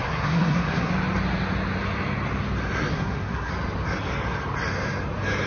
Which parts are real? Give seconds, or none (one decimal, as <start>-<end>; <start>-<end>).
0.9-2.9; 3.5-5.5